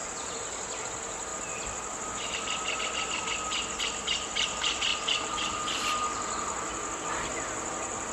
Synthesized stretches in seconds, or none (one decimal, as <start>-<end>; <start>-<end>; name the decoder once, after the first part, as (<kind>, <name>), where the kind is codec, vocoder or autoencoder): 0.8-1.3 (vocoder, BigVGAN v2); 2.1-8.1